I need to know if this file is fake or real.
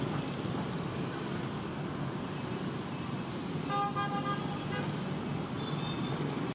real